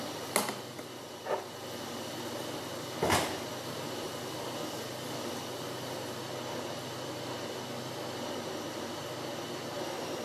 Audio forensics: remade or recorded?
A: recorded